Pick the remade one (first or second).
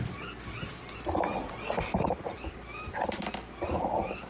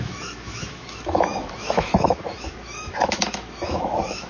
second